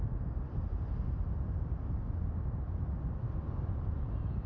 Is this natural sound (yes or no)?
yes